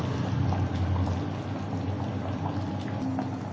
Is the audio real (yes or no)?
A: yes